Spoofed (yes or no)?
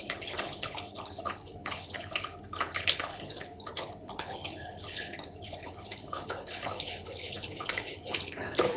yes